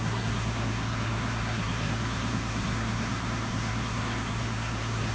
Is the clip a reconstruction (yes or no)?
yes